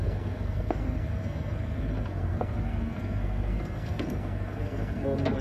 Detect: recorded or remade remade